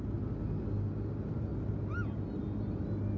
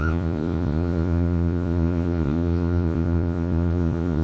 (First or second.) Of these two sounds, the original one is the first